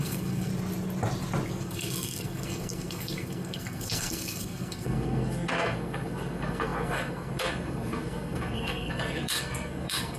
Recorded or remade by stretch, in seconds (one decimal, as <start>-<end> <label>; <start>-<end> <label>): 0.0-0.5 remade; 0.5-1.5 recorded; 1.5-10.2 remade